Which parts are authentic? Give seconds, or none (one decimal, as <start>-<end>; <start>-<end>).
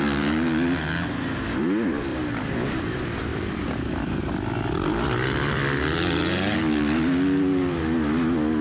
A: 0.0-2.1; 2.8-3.3; 4.2-8.6